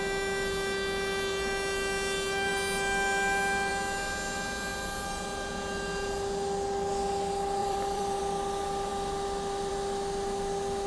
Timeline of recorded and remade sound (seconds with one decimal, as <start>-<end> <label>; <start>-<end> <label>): 0.0-7.6 recorded; 7.6-8.2 remade; 8.2-10.9 recorded